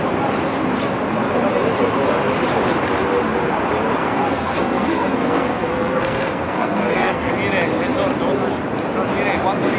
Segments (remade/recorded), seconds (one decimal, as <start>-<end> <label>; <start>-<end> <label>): 0.0-4.0 recorded; 4.0-7.3 remade; 7.3-9.8 recorded